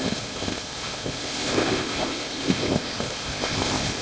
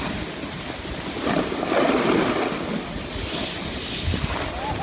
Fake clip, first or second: first